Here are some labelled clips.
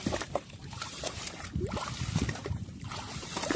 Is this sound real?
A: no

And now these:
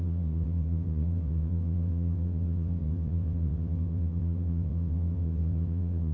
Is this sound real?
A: no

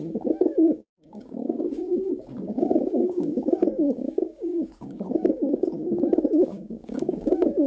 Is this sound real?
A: no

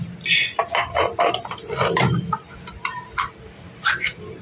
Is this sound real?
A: yes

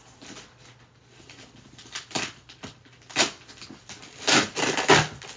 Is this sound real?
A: yes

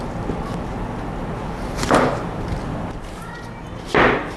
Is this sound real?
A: yes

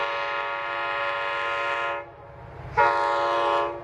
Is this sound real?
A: yes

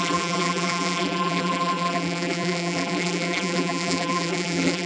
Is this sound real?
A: no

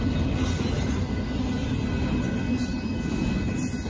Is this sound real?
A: yes